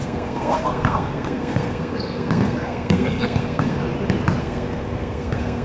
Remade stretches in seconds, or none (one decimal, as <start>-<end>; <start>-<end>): 0.0-3.8; 4.4-5.6